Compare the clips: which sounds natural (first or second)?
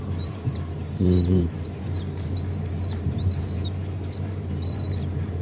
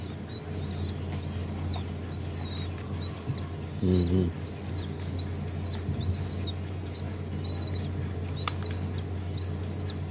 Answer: second